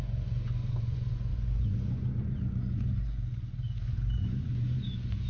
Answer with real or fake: fake